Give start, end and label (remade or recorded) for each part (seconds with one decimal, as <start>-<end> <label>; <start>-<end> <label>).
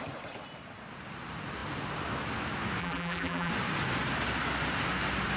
0.0-2.8 recorded; 2.8-3.5 remade; 3.5-5.4 recorded